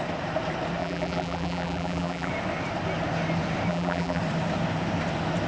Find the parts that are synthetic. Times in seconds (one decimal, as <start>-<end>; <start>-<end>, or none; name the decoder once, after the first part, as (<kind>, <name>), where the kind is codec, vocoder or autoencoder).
0.8-2.3 (vocoder, BigVGAN v2); 3.7-4.2